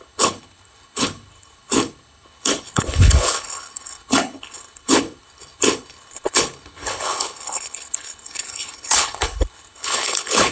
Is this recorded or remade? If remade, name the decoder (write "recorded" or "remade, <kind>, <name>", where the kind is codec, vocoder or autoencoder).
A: remade, codec, HILCodec